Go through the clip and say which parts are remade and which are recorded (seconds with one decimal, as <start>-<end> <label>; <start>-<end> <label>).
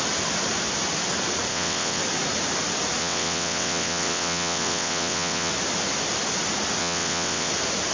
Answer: 0.0-1.5 recorded; 1.5-2.0 remade; 2.0-3.0 recorded; 3.0-5.5 remade; 5.5-6.8 recorded; 6.8-7.5 remade; 7.5-7.9 recorded